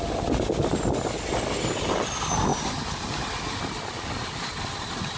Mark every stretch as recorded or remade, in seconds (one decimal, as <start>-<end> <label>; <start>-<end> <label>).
0.0-5.2 recorded